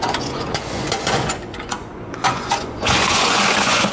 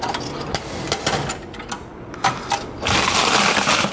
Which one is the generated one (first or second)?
first